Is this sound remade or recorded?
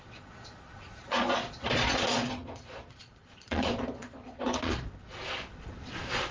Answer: remade